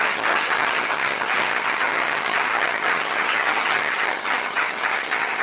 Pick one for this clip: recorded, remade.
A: remade